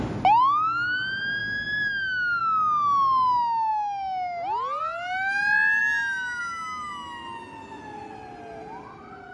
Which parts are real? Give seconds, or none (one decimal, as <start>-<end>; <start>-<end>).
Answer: 0.0-9.3